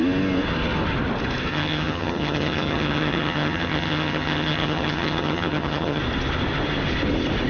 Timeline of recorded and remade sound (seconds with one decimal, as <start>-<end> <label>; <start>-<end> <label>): 0.0-1.5 recorded; 1.5-6.0 remade; 6.0-7.5 recorded